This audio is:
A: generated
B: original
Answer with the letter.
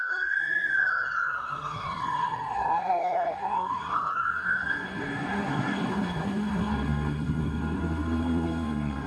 A